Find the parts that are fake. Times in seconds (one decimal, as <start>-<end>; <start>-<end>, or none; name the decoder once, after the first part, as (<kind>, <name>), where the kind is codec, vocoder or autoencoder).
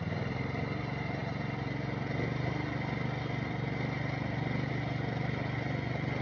none